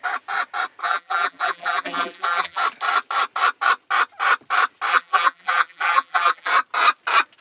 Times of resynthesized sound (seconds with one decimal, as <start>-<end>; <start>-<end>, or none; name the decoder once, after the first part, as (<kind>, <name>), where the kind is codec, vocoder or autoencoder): 0.8-2.6 (vocoder, BigVGAN v2); 4.9-6.5